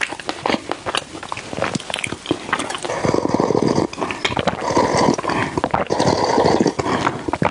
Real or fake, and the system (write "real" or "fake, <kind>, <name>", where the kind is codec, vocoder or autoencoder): real